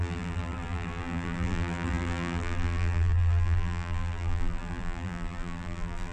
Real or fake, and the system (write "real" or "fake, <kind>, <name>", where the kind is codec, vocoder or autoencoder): fake, vocoder, BigVGAN v2